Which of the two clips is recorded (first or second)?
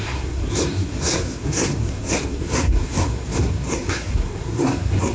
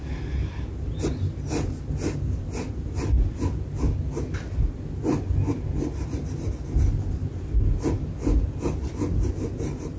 second